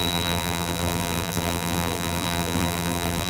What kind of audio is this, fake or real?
fake